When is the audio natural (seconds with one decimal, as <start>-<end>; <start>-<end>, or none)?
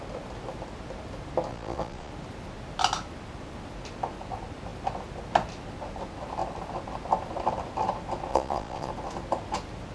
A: 0.0-1.5; 2.1-8.3; 8.9-9.9